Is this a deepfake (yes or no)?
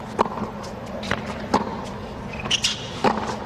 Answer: no